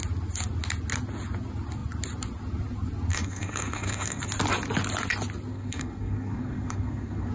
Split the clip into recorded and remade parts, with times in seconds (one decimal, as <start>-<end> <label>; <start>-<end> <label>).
0.0-3.1 recorded; 3.1-4.2 remade; 4.2-5.5 recorded; 5.5-7.3 remade